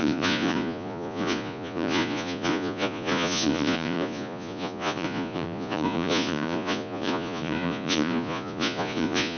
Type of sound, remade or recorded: remade